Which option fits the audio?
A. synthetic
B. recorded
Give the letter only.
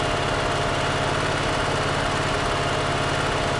B